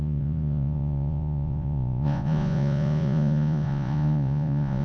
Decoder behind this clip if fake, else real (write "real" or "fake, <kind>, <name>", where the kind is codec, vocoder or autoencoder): fake, vocoder, Vocos